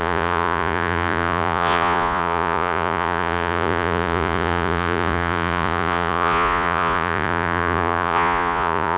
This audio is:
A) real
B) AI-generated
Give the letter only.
B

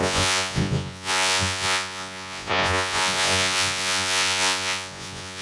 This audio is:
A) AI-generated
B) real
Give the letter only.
A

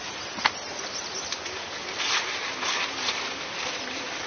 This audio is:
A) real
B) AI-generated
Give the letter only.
A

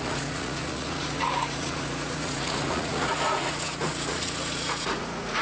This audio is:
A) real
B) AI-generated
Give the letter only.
B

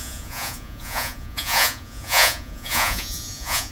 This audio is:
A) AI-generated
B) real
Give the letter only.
A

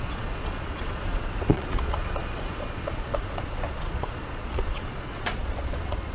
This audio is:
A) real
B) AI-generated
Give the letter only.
B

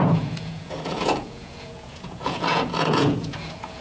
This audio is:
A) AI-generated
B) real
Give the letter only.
A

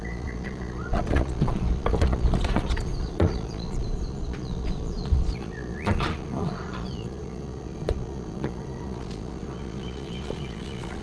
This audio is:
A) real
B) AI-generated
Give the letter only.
B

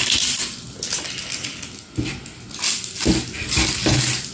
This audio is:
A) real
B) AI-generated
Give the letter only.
A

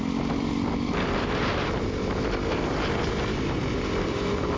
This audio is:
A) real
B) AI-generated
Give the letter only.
A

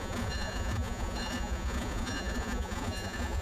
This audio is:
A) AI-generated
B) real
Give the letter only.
A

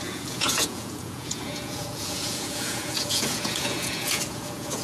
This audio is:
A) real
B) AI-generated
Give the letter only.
B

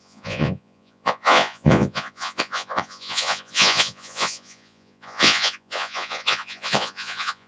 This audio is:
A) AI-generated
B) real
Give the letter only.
A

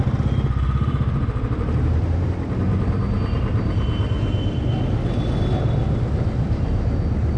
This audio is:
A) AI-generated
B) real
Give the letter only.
B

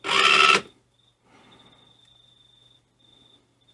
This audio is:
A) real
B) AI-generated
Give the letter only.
A